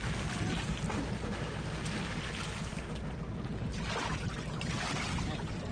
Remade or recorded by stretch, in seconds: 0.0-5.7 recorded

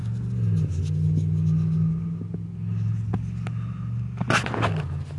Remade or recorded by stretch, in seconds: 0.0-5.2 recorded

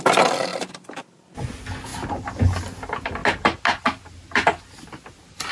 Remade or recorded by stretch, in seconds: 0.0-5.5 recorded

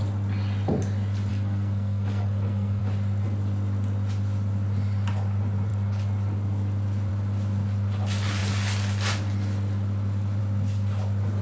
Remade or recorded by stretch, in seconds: 0.0-1.3 recorded; 1.3-2.8 remade; 2.8-11.4 recorded

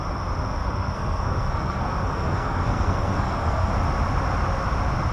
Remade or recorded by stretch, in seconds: 0.0-0.6 recorded; 0.6-3.7 remade; 3.7-5.1 recorded